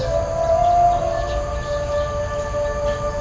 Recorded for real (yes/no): yes